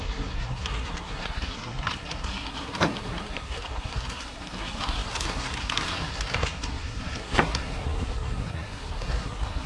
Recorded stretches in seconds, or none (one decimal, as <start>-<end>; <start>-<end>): none